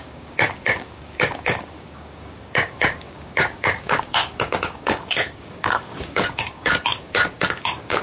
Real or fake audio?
fake